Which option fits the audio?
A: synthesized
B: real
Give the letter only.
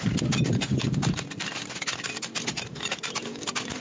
B